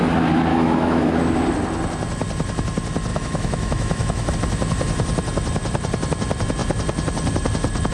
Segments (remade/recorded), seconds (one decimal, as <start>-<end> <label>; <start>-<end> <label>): 0.0-0.5 recorded; 0.5-1.2 remade; 1.2-3.1 recorded; 3.1-4.3 remade; 4.3-7.9 recorded